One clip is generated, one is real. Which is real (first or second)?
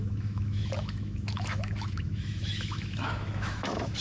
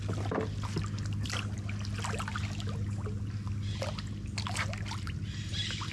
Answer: second